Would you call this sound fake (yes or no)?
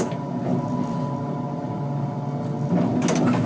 no